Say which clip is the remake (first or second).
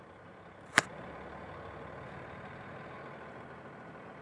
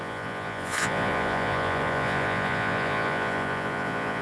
second